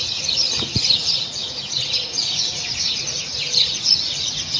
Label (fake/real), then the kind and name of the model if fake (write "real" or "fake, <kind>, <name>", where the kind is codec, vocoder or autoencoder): fake, vocoder, Vocos